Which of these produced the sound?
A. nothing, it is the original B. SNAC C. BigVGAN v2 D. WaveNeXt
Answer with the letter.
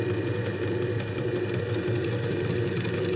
C